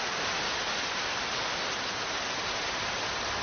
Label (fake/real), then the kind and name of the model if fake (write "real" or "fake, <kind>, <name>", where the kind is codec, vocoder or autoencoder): real